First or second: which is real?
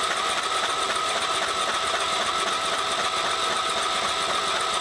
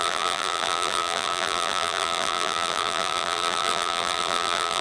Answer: first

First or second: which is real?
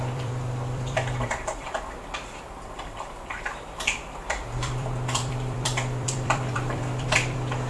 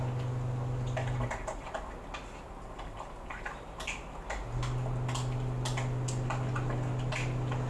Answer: second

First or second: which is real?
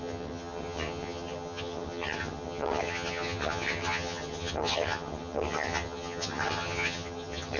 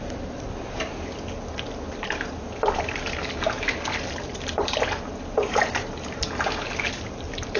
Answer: second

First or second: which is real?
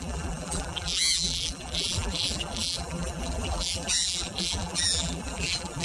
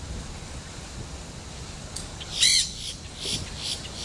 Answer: second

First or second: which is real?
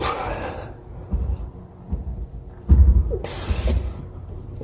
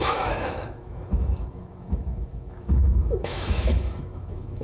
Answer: first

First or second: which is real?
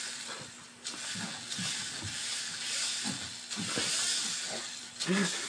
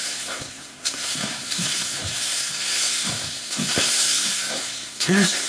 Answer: first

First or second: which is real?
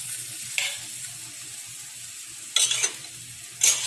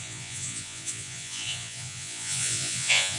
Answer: first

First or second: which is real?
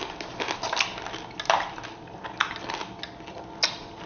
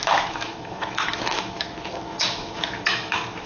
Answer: first